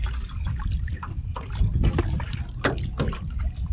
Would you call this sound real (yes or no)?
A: yes